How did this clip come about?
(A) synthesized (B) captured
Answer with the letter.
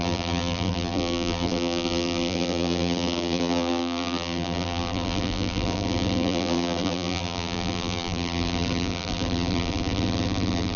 A